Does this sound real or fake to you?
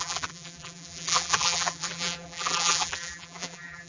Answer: fake